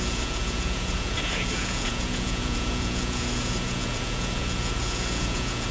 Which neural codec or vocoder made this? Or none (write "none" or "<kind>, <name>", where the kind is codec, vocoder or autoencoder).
vocoder, Vocos